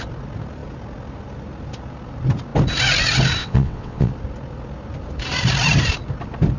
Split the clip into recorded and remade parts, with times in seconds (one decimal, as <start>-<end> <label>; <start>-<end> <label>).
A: 0.0-3.4 recorded; 3.4-4.1 remade; 4.1-6.6 recorded